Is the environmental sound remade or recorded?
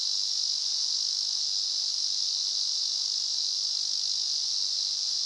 recorded